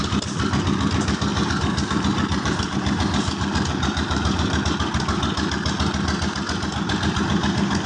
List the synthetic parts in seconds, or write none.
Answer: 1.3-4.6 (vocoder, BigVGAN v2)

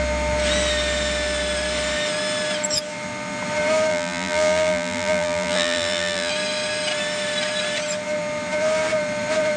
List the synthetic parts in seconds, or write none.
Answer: 3.9-6.3 (vocoder, BigVGAN v2)

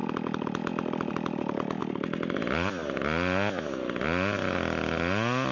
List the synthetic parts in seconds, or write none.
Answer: none

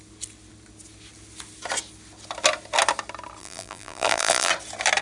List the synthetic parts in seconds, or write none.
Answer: 3.4-4.5 (vocoder, BigVGAN v2)

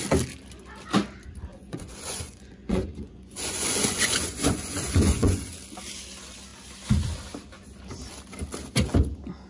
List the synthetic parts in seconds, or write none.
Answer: 1.5-5.5 (vocoder, Vocos)

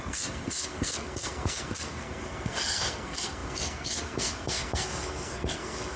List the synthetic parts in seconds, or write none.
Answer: 0.0-6.0 (codec, SNAC)

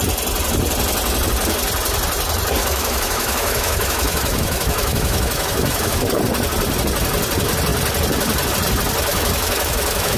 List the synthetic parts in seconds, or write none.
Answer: 2.6-6.2 (autoencoder, DAC-VAE); 9.1-10.2